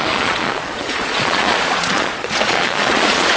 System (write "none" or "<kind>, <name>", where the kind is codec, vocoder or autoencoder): vocoder, Vocos